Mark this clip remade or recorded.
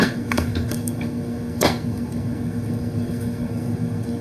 remade